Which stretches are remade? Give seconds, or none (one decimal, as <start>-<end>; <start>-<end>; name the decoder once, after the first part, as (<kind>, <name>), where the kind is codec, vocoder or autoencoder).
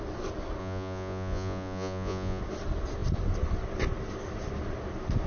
0.6-2.4 (vocoder, Vocos)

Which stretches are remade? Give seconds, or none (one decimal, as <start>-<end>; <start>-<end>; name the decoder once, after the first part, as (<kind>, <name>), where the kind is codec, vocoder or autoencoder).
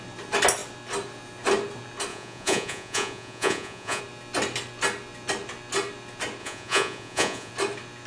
2.1-4.0 (vocoder, Vocos); 6.4-7.5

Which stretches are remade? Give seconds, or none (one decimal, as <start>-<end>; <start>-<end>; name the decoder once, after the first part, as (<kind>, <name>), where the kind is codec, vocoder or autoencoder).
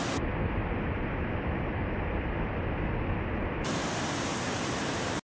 none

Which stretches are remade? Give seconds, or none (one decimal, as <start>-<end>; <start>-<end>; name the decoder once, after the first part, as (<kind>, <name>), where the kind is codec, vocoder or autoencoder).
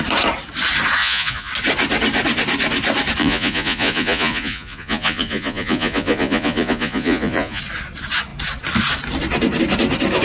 1.0-1.5 (vocoder, Vocos); 3.2-7.6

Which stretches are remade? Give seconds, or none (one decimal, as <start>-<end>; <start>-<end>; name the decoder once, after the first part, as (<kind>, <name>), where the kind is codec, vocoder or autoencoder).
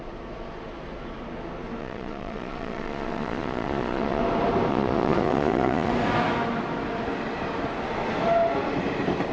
1.8-4.2 (vocoder, Vocos); 4.7-5.9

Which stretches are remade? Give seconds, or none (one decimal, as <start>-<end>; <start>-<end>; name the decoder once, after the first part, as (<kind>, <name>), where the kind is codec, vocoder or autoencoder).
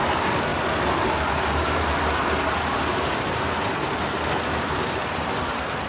none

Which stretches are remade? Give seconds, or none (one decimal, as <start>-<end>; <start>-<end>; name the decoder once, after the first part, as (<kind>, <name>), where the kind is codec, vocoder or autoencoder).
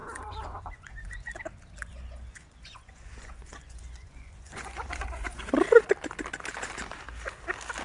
0.0-1.4 (vocoder, Vocos); 1.9-5.5